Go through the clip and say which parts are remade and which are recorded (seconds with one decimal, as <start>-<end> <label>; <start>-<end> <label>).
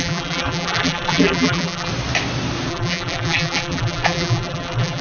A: 0.0-1.9 remade; 1.9-2.7 recorded; 2.7-5.0 remade